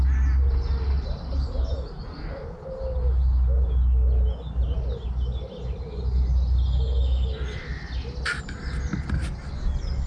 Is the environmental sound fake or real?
real